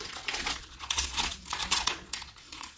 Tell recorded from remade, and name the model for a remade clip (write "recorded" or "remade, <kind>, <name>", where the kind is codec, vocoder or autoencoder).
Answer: remade, vocoder, Vocos